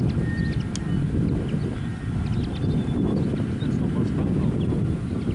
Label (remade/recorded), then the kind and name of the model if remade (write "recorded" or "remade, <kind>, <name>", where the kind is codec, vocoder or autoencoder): recorded